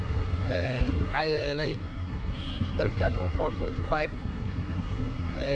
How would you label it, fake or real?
fake